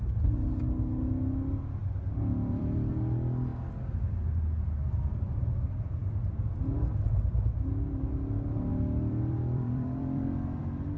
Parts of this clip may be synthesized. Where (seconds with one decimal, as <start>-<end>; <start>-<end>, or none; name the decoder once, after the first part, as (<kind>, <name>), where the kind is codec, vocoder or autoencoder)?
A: 1.8-2.9 (vocoder, BigVGAN v2); 8.7-10.6